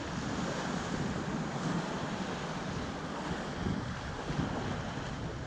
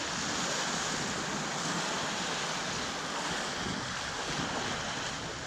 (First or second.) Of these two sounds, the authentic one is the second